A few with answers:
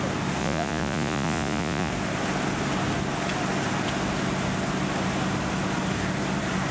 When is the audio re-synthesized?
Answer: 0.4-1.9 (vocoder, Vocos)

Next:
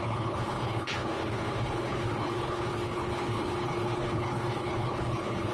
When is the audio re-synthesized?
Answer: 0.0-5.5 (codec, HILCodec)

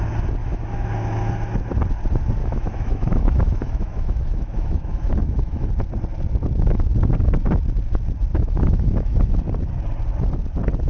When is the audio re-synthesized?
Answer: 0.4-0.9 (autoencoder, DAC-VAE); 2.4-5.7; 8.3-9.3

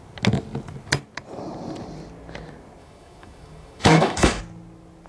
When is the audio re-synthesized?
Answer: 2.8-4.4 (autoencoder, DAC-VAE)

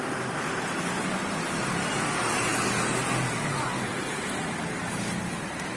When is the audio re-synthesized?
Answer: none

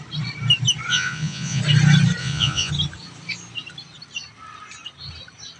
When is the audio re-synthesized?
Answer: 0.9-1.6 (vocoder, Vocos); 2.2-2.7

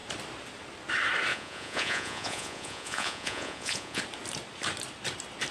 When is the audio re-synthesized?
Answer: 1.3-4.0 (vocoder, Vocos)